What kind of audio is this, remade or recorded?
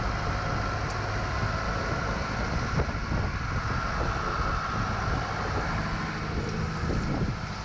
recorded